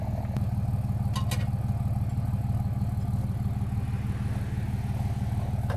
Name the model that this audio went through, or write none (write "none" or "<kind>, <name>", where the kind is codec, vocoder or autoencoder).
none